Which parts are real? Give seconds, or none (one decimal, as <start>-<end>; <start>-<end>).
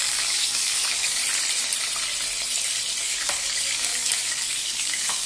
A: 1.2-3.0